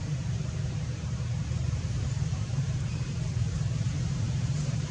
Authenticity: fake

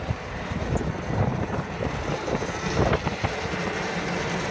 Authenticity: fake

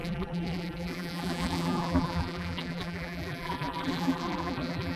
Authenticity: fake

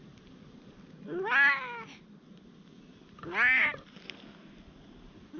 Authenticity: real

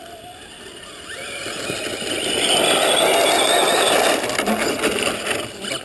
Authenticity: real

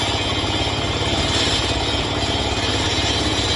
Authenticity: real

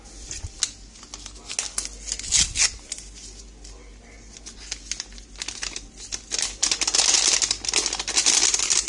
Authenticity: real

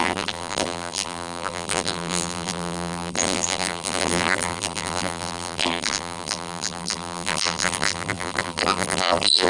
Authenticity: fake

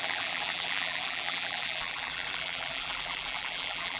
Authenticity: fake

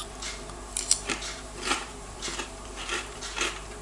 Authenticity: fake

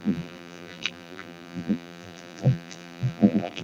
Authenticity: fake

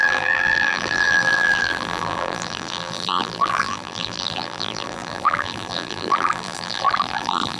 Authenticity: fake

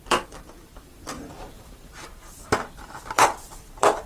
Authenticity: fake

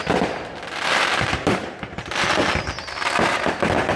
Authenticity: fake